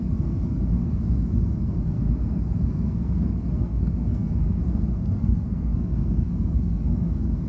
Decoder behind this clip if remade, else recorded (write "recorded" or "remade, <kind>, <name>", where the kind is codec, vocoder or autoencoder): remade, codec, SNAC